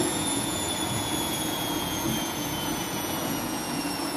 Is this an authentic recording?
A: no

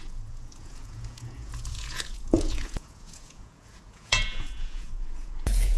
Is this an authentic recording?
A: no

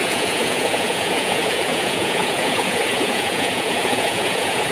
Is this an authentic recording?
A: no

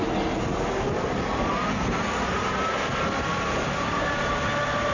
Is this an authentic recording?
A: yes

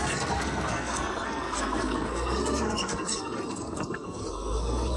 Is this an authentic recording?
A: no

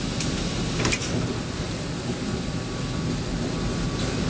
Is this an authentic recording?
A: yes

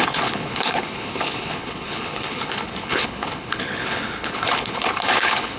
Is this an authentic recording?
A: no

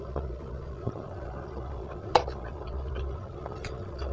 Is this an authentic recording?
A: no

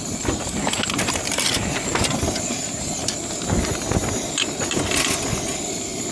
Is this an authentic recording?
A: yes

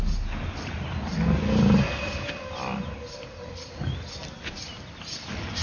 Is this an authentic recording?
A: yes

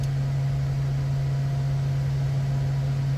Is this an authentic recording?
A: yes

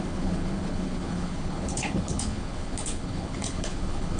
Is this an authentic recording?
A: no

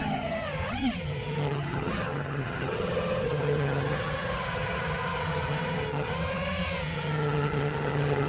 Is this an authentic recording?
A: no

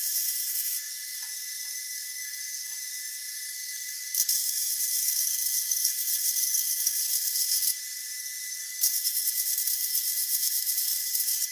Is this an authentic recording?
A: no